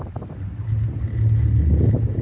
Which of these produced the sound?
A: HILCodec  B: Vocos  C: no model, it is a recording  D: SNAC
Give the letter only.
C